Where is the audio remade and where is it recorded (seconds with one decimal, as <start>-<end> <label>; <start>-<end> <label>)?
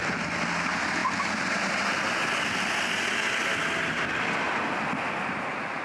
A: 0.0-5.8 recorded